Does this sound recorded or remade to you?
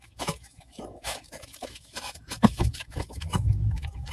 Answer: remade